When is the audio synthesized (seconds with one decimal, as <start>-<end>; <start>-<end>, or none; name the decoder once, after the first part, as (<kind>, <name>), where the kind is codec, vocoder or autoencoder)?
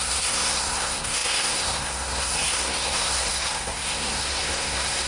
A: 0.0-5.1 (codec, SNAC)